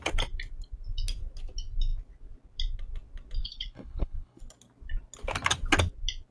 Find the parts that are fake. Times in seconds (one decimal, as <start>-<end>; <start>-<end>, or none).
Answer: 3.4-4.4